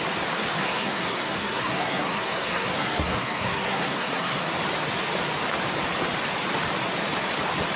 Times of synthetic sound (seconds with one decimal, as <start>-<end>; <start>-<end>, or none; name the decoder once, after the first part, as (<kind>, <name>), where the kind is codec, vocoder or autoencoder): 0.6-4.4 (codec, SNAC)